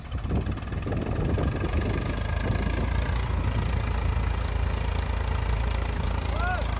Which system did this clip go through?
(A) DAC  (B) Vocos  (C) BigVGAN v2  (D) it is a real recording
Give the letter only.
D